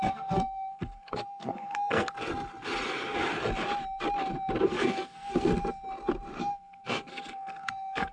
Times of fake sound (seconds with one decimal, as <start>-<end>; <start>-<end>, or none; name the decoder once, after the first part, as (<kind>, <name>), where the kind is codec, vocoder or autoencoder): 0.0-2.1 (codec, SNAC); 4.6-5.5; 6.4-8.1